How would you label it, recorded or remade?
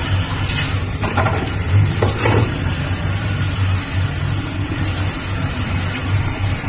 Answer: remade